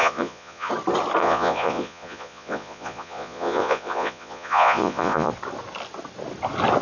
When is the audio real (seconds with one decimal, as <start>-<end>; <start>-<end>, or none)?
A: 0.7-1.2; 5.3-6.8